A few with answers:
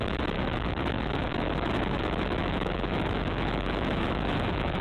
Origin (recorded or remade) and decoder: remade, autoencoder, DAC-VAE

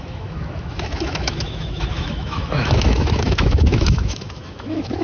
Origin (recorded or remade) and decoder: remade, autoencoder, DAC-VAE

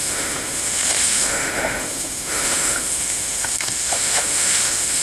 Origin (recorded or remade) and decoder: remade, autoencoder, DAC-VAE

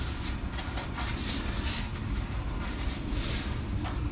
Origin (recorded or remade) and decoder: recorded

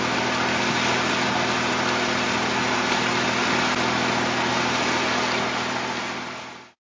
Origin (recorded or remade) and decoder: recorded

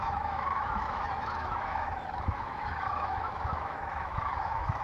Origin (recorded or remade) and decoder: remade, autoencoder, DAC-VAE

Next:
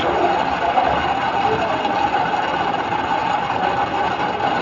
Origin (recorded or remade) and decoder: recorded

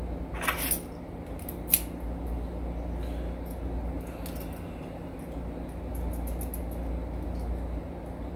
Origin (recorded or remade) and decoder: recorded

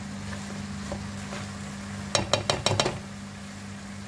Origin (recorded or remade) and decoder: recorded